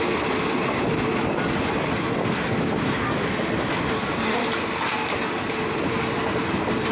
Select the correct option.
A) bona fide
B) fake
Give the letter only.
A